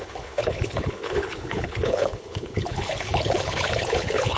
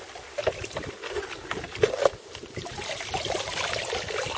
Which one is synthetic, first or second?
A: first